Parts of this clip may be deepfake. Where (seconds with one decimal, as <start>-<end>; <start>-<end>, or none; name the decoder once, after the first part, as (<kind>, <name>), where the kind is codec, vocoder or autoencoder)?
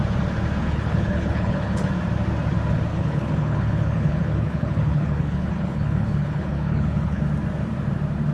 0.6-1.9 (codec, HILCodec); 2.9-7.2